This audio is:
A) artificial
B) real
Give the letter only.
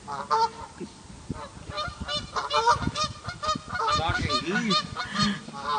B